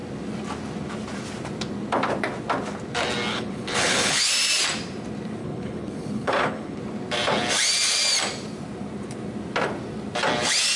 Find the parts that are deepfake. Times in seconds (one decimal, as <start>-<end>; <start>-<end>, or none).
3.3-4.3; 5.4-6.8